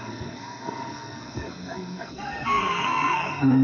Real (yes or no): no